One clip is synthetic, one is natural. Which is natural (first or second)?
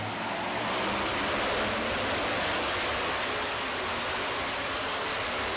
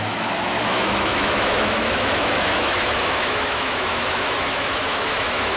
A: first